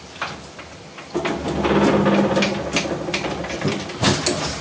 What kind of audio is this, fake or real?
real